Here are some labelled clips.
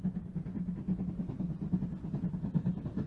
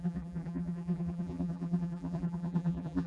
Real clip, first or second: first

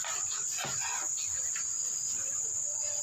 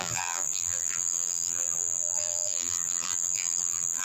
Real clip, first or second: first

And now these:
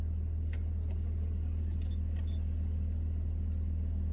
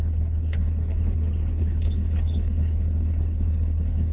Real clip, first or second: first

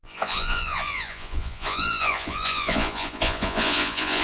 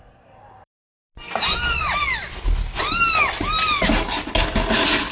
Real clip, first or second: second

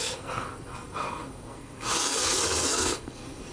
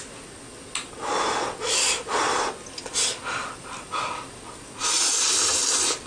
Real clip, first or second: second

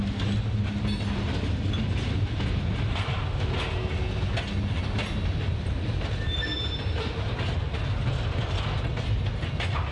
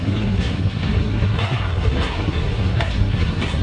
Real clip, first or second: first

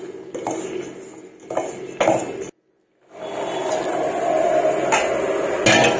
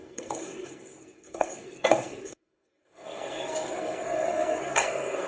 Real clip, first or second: first